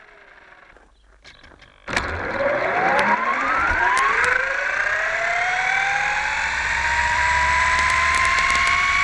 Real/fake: fake